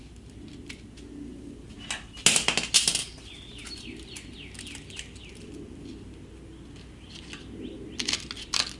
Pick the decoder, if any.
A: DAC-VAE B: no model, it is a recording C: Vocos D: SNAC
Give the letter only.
B